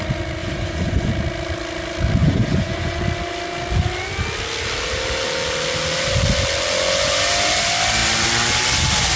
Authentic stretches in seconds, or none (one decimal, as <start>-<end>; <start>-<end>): 0.0-0.4; 1.1-2.2; 3.0-9.2